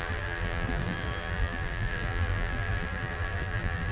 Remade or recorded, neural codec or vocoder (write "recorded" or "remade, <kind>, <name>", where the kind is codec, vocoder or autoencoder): remade, vocoder, BigVGAN v2